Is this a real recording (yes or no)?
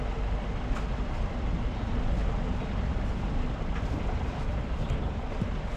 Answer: yes